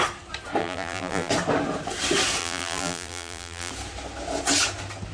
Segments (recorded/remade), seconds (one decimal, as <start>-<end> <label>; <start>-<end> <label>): 0.0-0.6 recorded; 0.6-1.3 remade; 1.3-2.4 recorded; 2.4-3.7 remade; 3.7-5.1 recorded